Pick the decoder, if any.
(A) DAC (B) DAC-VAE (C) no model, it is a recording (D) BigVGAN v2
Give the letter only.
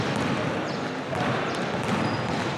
C